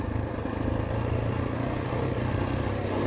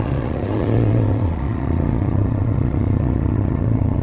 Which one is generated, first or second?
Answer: second